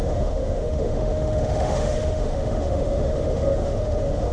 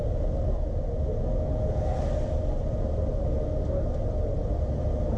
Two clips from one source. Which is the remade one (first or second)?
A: first